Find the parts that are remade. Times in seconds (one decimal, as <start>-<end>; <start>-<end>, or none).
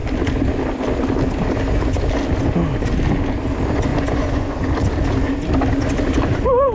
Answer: 3.9-4.7